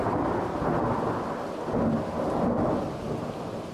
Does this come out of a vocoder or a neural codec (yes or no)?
no